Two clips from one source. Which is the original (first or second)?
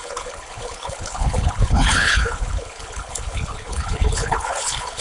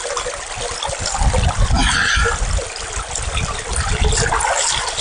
second